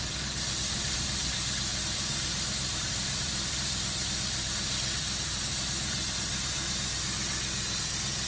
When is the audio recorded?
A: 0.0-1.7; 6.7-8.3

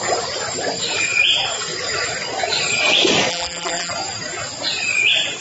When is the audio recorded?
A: 0.0-3.3; 3.9-5.4